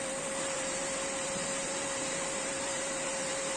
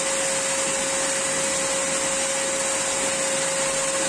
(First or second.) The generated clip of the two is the first